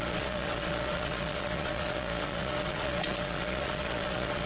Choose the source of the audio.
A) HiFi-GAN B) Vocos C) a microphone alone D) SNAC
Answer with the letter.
B